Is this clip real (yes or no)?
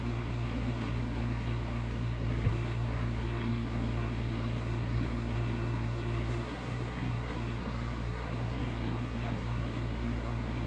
no